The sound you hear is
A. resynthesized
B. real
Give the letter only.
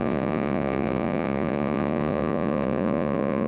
A